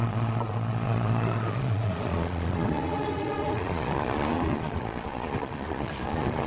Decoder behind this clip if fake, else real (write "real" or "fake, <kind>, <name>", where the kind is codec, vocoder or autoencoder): fake, vocoder, Vocos